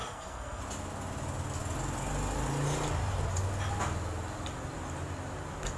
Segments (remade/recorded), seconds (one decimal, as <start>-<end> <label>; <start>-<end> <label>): 0.0-0.6 remade; 0.6-5.8 recorded